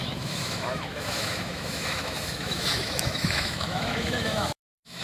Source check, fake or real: fake